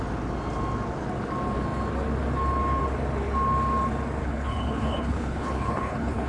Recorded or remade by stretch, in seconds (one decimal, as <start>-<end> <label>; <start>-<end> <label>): 0.0-4.2 recorded; 4.2-6.3 remade